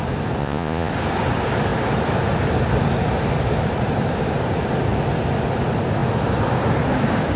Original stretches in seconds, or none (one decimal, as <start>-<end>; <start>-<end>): 0.0-0.4; 0.9-7.4